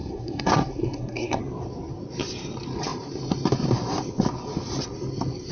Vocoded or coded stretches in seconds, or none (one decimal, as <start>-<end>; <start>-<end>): 0.0-1.4